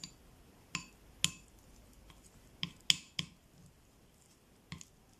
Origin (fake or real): real